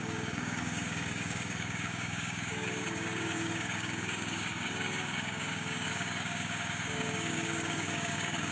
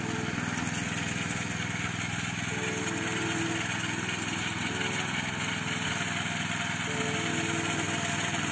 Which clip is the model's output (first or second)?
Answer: first